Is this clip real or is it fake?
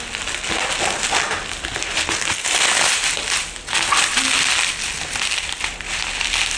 real